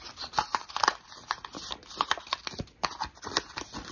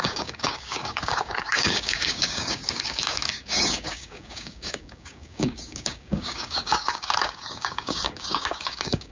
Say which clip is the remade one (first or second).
second